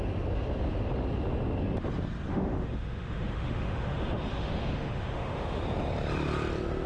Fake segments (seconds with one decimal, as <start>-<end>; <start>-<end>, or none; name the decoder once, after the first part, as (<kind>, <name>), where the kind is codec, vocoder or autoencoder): 2.3-5.6 (autoencoder, DAC-VAE)